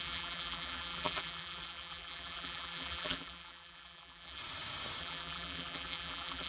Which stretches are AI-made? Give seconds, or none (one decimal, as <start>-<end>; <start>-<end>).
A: 0.0-4.4; 5.0-6.5